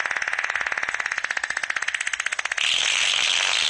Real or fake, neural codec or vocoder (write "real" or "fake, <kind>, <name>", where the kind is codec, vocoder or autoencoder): real